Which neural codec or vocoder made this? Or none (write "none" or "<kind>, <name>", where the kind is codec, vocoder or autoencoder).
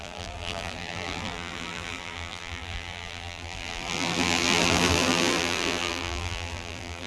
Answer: vocoder, BigVGAN v2